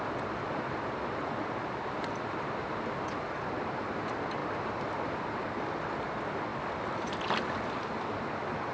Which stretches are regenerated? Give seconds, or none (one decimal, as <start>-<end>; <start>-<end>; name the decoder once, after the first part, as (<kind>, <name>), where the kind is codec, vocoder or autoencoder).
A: 0.0-4.4 (vocoder, BigVGAN v2); 6.0-6.5